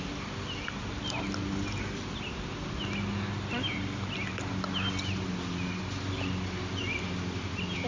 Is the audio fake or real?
real